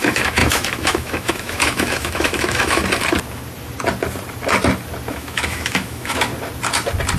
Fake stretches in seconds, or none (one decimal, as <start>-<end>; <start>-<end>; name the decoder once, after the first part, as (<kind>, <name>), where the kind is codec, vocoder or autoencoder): 0.0-2.8 (autoencoder, DAC-VAE); 5.1-6.3